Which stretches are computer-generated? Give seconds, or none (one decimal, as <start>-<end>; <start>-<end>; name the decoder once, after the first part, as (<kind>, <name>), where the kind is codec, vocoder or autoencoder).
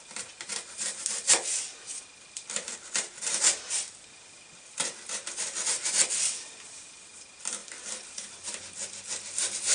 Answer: none